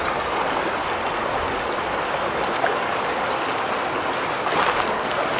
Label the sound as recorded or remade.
recorded